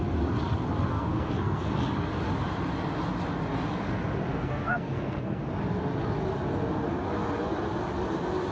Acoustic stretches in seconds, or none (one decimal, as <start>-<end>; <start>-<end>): 0.0-0.9; 1.7-4.3; 5.4-8.5